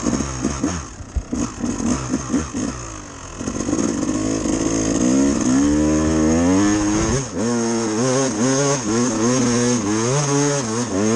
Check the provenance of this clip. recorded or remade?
recorded